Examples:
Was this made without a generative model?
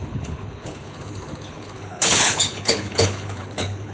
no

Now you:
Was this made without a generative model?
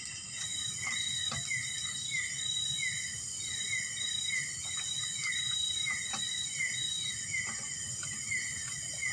yes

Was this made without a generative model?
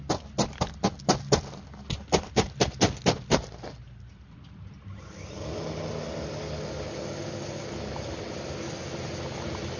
yes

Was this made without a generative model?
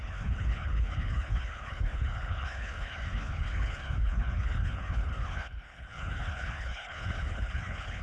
no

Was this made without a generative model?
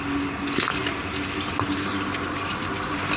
yes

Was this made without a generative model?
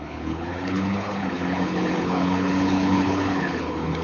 no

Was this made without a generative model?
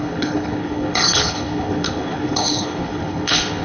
no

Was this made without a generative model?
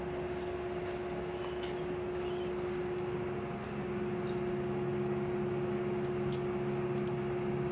yes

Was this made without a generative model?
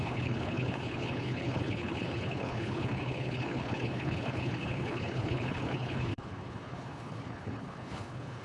no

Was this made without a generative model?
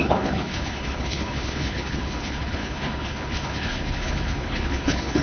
no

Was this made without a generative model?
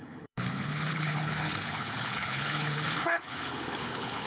no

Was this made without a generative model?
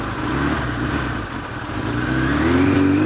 yes